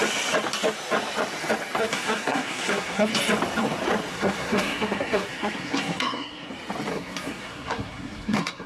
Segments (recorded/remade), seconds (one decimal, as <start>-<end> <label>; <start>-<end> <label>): 0.0-1.8 recorded; 1.8-3.1 remade; 3.1-4.1 recorded; 4.1-6.5 remade; 6.5-6.9 recorded; 6.9-8.7 remade